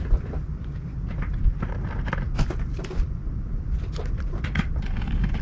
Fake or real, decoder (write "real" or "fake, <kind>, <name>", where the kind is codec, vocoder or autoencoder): fake, vocoder, BigVGAN v2